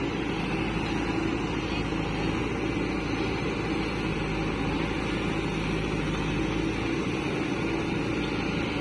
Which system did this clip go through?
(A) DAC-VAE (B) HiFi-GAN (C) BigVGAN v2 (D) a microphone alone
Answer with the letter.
D